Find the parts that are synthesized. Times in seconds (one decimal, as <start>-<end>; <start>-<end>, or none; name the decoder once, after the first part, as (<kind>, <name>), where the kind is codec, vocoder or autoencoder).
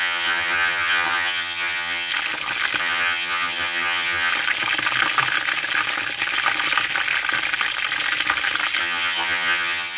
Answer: 0.0-2.1 (vocoder, HiFi-GAN); 2.8-4.3; 8.8-10.0